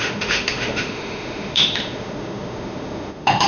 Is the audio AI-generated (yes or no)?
yes